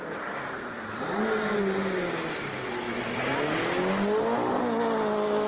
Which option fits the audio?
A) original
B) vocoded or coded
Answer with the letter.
A